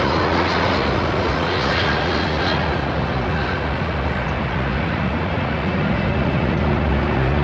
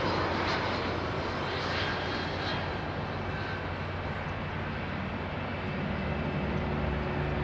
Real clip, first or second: second